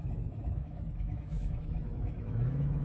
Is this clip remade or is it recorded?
remade